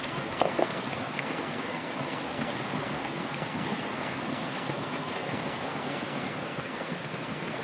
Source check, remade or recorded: remade